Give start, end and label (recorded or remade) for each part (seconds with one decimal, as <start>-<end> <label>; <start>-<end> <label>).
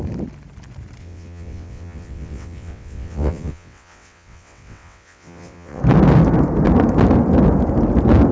0.0-1.0 recorded; 1.0-5.8 remade; 5.8-8.3 recorded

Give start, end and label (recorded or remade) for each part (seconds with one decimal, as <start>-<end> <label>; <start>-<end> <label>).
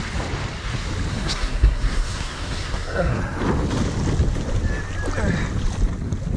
0.0-1.1 recorded; 1.1-3.2 remade; 3.2-6.4 recorded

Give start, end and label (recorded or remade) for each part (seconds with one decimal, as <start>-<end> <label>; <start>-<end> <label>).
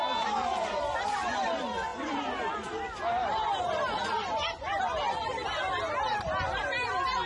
0.0-7.3 recorded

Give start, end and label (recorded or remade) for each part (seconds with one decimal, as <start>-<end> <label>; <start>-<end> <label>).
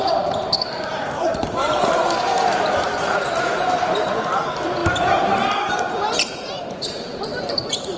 0.0-8.0 remade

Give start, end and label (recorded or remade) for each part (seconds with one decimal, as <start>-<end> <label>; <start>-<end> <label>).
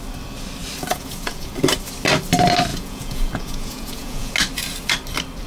0.0-0.9 recorded; 0.9-1.5 remade; 1.5-2.7 recorded; 2.7-4.3 remade; 4.3-5.5 recorded